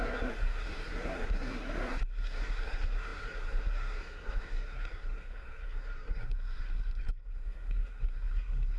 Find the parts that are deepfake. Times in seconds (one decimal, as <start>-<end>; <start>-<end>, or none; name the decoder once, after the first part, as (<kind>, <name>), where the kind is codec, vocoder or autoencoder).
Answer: 0.0-8.8 (codec, SNAC)